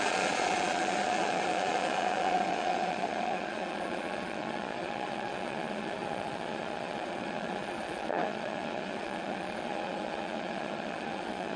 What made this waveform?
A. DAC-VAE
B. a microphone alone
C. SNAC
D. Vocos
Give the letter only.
D